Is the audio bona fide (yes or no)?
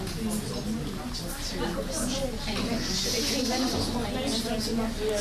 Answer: yes